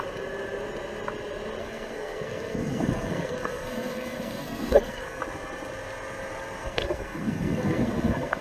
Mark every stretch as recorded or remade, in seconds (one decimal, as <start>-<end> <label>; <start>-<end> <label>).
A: 0.0-1.6 recorded; 1.6-5.2 remade; 5.2-6.6 recorded; 6.6-8.4 remade